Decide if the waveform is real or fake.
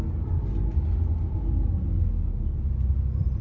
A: real